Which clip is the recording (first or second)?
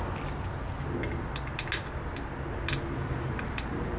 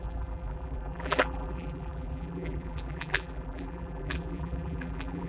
first